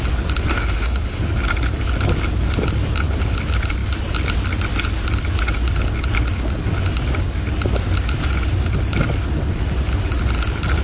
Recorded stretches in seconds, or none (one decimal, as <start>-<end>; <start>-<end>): 0.0-0.5; 1.2-10.8